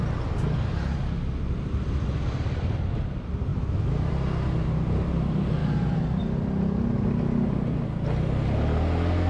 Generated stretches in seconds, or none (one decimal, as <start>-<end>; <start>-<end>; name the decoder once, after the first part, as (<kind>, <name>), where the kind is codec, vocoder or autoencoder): 3.5-4.1 (autoencoder, DAC-VAE)